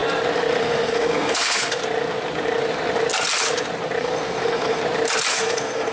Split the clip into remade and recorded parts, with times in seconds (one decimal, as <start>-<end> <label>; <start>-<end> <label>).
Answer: 0.0-0.6 recorded; 0.6-1.8 remade; 1.8-4.0 recorded; 4.0-4.8 remade; 4.8-5.3 recorded; 5.3-5.9 remade